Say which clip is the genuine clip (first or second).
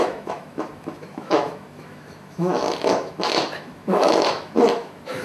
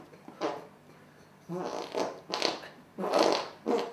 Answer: second